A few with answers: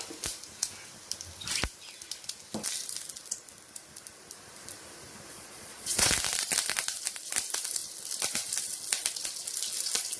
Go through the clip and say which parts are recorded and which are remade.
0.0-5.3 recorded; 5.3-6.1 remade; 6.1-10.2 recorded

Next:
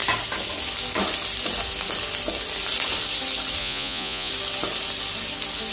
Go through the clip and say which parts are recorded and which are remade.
0.0-3.6 recorded; 3.6-4.3 remade; 4.3-5.7 recorded

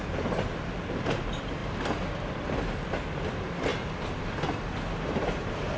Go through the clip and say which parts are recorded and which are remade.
0.0-5.8 recorded